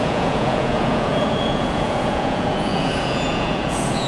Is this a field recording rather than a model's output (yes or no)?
no